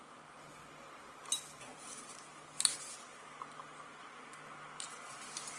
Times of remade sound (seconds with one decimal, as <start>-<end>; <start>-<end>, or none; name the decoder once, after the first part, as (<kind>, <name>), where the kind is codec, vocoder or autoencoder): none